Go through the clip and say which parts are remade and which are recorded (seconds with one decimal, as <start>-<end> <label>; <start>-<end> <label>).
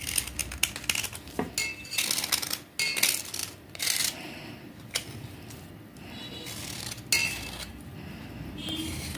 0.0-3.4 recorded; 3.4-5.7 remade; 5.7-9.2 recorded